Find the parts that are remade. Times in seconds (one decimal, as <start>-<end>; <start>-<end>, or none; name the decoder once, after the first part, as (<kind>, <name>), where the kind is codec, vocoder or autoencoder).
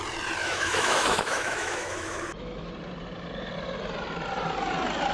0.4-2.7 (autoencoder, DAC-VAE)